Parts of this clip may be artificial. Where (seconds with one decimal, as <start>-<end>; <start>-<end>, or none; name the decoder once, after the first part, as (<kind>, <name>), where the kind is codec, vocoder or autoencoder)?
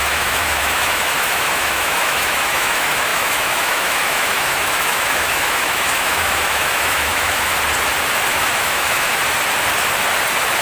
0.0-7.5 (autoencoder, DAC-VAE); 8.3-9.2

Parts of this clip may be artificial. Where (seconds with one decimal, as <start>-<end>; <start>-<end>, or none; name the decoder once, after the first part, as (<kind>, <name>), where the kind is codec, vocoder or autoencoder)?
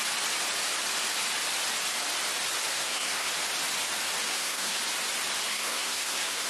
2.7-3.3 (codec, SNAC); 4.3-4.8; 5.5-6.5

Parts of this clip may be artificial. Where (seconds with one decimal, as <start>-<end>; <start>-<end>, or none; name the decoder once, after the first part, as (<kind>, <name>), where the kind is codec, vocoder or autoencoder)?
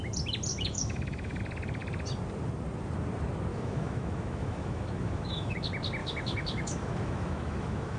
0.5-1.4 (autoencoder, DAC-VAE); 3.5-5.6; 6.0-8.0